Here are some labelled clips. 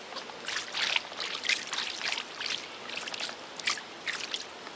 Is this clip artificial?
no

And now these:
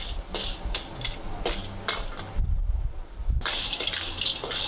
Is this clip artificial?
no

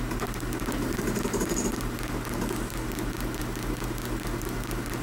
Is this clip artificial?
no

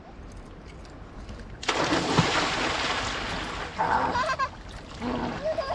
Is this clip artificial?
no